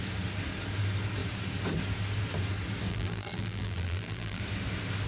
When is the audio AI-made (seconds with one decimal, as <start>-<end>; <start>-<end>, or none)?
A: 2.9-4.4